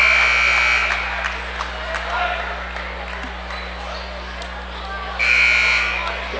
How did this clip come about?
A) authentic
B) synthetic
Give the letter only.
A